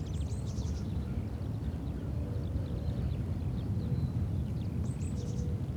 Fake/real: real